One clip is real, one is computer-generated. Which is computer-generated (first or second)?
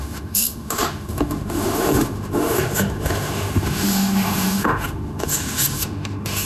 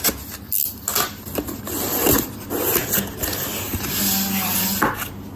first